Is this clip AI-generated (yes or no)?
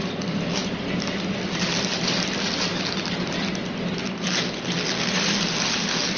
no